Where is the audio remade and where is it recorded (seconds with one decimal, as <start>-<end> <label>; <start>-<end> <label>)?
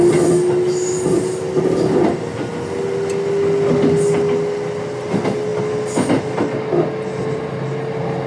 0.0-8.3 recorded